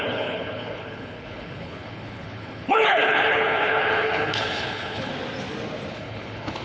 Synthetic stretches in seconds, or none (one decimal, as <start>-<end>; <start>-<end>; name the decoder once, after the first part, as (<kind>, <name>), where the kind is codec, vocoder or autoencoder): 0.0-5.1 (codec, HILCodec); 5.9-6.6